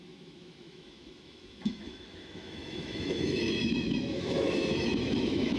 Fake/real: fake